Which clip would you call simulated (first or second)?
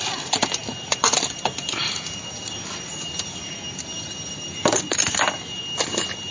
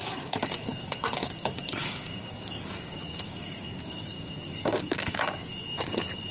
second